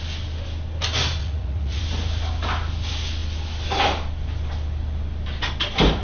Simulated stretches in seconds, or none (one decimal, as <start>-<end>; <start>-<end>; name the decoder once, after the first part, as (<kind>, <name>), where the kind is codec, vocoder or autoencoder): 1.2-1.8 (vocoder, Vocos)